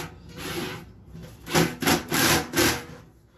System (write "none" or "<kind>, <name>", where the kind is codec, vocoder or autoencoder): none